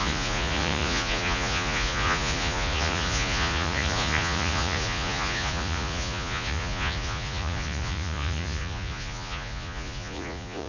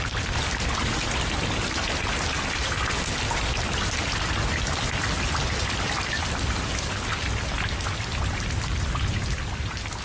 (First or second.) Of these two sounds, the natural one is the second